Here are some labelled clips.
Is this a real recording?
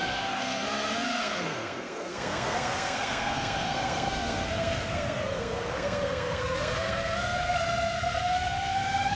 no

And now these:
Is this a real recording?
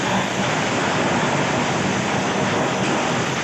yes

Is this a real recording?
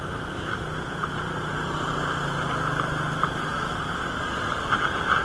yes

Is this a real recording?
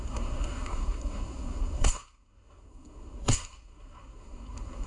no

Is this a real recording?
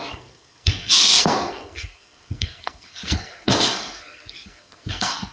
no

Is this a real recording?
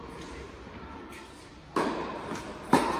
yes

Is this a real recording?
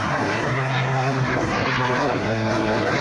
no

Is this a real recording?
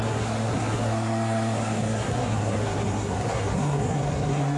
no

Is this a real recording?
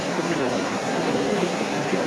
no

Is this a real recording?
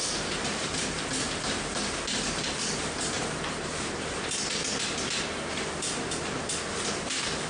yes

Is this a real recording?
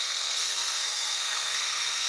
no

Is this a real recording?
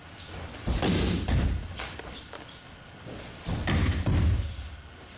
yes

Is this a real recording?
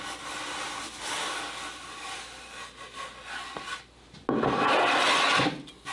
yes